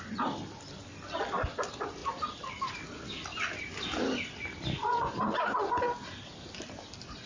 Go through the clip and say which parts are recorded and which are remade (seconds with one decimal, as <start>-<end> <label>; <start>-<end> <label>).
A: 0.0-7.3 recorded